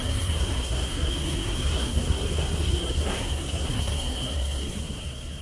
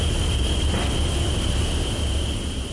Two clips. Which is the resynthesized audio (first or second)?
first